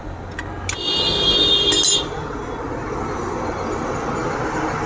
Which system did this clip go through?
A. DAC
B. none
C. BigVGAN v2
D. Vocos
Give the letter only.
B